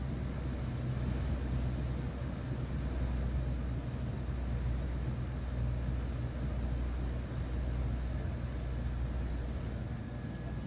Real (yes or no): yes